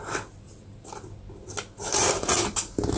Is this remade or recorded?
recorded